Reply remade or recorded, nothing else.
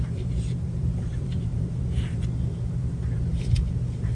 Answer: remade